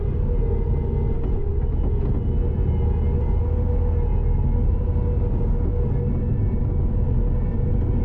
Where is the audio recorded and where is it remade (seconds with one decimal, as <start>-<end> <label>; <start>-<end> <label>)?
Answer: 0.0-8.0 recorded